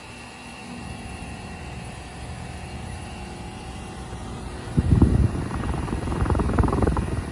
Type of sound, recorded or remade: remade